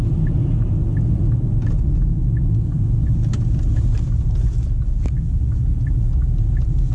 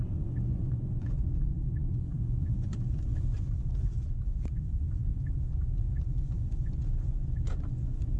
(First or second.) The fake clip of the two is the second